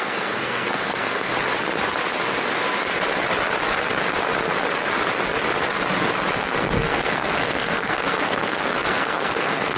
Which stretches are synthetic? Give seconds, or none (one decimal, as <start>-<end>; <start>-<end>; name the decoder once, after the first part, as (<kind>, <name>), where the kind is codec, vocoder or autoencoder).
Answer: 0.0-1.3 (codec, SNAC); 6.4-9.8